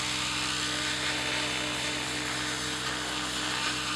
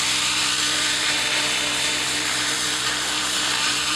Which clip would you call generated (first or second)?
second